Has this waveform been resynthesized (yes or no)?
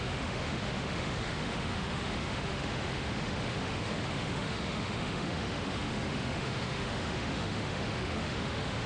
yes